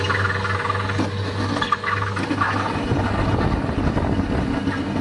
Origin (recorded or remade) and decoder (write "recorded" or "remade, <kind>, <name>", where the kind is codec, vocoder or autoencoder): recorded